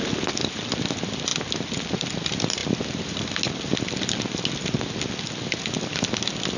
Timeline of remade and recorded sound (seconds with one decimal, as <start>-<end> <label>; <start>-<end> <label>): 0.0-6.6 recorded